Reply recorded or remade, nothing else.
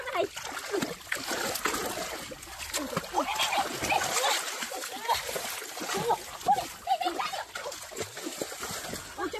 recorded